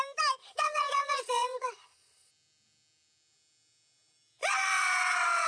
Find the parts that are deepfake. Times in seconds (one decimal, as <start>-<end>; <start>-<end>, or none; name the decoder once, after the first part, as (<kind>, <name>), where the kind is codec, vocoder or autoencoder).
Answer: 0.4-2.3 (vocoder, WaveNeXt); 4.4-5.5